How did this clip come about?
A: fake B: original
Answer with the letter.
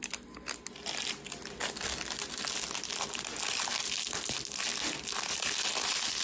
B